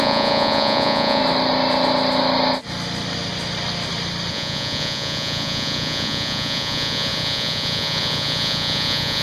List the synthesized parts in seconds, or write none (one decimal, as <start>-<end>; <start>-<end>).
0.0-1.2; 4.3-9.2